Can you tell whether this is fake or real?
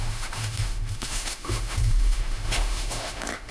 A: fake